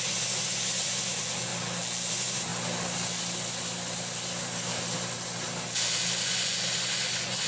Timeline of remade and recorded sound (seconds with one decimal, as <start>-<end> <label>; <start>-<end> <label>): 0.0-1.5 remade; 1.5-2.1 recorded; 2.1-2.5 remade; 2.5-6.2 recorded; 6.2-7.5 remade